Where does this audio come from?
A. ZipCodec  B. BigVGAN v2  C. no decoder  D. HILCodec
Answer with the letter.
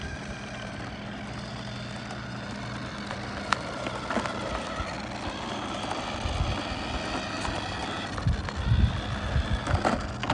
C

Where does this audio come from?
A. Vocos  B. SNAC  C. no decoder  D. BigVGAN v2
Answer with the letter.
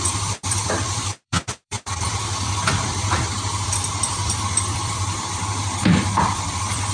D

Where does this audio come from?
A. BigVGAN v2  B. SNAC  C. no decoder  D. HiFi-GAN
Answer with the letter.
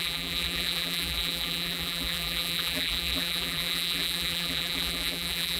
A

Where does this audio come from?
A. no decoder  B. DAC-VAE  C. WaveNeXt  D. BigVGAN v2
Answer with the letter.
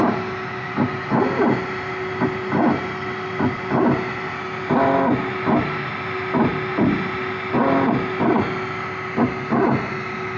A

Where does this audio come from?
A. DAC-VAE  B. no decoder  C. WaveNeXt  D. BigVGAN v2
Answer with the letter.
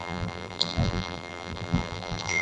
D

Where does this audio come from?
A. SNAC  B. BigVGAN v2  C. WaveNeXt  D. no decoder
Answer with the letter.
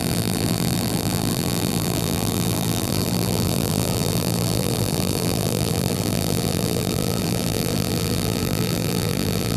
B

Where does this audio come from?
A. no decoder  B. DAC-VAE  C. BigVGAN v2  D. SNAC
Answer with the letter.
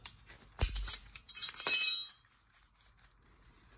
C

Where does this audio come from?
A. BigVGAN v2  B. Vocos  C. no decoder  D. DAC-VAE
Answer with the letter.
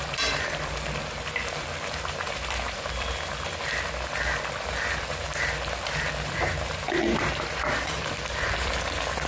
A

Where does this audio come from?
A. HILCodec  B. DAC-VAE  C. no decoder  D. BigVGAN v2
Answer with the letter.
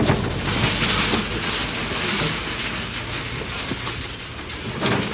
C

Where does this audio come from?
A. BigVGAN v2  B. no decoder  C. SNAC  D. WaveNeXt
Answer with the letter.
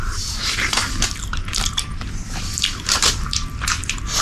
A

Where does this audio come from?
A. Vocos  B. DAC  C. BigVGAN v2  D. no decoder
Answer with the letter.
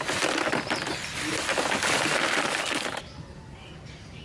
D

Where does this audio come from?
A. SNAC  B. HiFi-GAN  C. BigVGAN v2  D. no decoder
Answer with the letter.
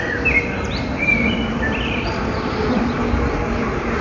C